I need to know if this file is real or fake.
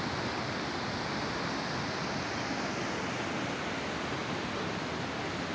real